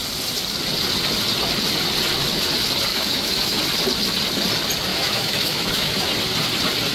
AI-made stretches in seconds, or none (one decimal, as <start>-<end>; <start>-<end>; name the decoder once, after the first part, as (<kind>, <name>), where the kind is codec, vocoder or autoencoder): 2.9-3.6 (autoencoder, DAC-VAE); 4.9-6.0